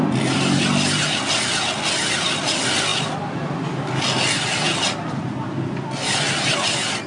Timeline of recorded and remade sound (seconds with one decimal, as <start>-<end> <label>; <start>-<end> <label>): 0.0-7.1 recorded